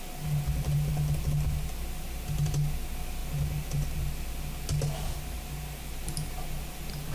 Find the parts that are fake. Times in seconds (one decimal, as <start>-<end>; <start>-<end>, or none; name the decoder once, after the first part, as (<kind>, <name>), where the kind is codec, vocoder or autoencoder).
none